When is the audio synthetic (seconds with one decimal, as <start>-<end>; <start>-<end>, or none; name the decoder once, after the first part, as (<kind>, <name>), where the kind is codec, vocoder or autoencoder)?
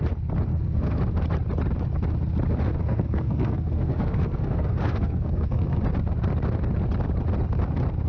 0.5-1.0 (codec, SNAC); 2.8-5.8